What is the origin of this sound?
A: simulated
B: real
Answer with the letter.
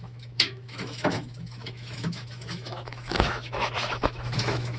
A